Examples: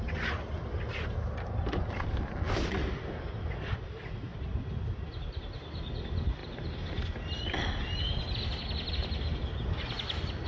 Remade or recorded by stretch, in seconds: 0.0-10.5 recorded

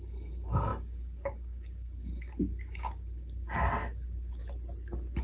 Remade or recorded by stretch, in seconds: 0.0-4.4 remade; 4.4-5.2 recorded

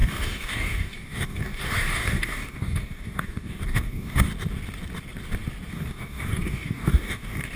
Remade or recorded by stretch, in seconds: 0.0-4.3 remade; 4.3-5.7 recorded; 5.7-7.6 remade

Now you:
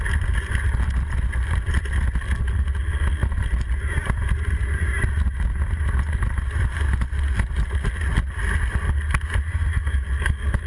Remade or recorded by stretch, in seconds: 0.0-10.7 recorded